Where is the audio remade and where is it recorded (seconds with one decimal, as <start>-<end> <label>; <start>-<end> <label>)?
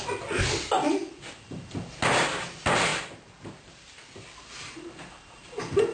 0.0-2.9 recorded; 2.9-3.7 remade; 3.7-5.9 recorded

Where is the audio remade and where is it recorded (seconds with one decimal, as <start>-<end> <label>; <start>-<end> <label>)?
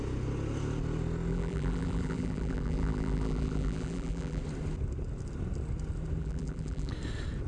0.0-1.3 recorded; 1.3-4.4 remade; 4.4-6.2 recorded; 6.2-6.9 remade; 6.9-7.5 recorded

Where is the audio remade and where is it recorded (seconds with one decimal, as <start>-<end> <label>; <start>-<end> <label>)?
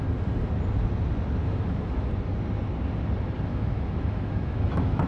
0.0-1.4 recorded; 1.4-2.1 remade; 2.1-3.5 recorded; 3.5-5.1 remade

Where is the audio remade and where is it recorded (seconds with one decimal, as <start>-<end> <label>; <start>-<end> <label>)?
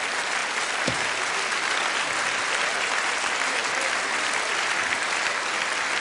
0.0-6.0 recorded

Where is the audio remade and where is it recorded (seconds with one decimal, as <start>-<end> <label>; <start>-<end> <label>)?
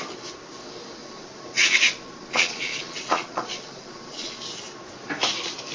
0.0-1.0 recorded; 1.0-4.4 remade; 4.4-5.7 recorded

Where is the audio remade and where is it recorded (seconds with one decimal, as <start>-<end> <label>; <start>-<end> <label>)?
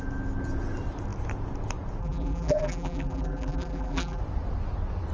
0.0-2.0 recorded; 2.0-4.2 remade; 4.2-5.1 recorded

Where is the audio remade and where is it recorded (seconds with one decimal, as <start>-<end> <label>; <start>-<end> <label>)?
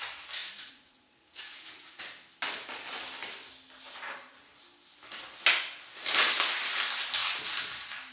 0.0-0.4 recorded; 0.4-2.0 remade; 2.0-8.1 recorded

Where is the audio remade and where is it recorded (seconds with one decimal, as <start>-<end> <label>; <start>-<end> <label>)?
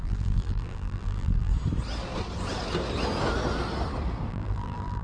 0.0-1.5 remade; 1.5-4.3 recorded; 4.3-5.0 remade